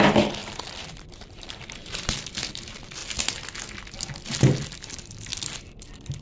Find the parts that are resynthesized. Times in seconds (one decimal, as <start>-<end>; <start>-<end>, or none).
0.0-3.0; 4.8-5.3